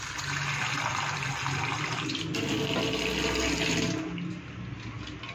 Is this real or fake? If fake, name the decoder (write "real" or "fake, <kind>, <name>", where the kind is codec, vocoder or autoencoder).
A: real